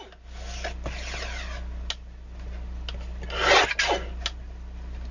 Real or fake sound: real